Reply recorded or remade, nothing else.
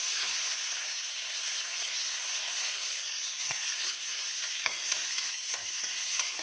remade